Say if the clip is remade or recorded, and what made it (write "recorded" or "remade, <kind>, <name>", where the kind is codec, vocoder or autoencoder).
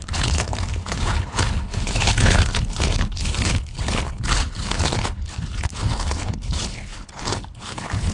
remade, codec, HILCodec